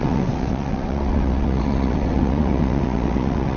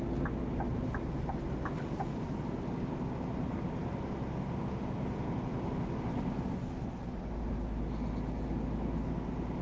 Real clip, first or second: second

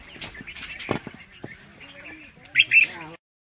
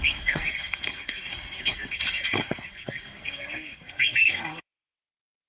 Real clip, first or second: first